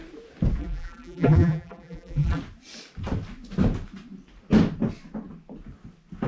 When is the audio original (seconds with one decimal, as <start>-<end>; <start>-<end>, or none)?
0.0-0.6; 2.4-6.3